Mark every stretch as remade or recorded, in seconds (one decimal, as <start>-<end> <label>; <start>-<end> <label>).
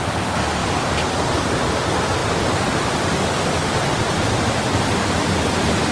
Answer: 0.0-5.9 recorded